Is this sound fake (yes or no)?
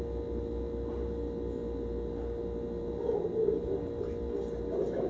no